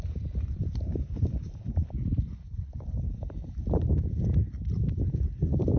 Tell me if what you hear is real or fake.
fake